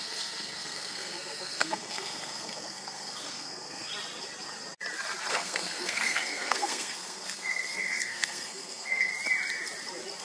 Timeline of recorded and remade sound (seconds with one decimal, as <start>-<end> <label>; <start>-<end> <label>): 0.0-3.9 remade; 3.9-5.3 recorded; 5.3-9.1 remade; 9.1-10.2 recorded